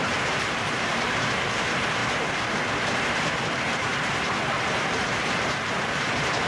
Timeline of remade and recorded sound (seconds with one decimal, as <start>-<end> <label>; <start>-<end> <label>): 0.0-2.0 remade; 2.0-2.9 recorded; 2.9-3.9 remade; 3.9-4.8 recorded; 4.8-6.5 remade